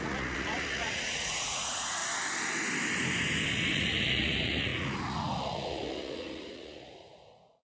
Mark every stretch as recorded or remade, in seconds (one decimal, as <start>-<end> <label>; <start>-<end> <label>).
0.0-2.0 remade; 2.0-3.5 recorded; 3.5-7.7 remade